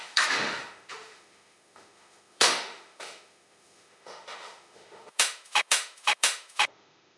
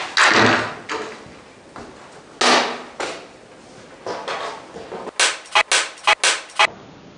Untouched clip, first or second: second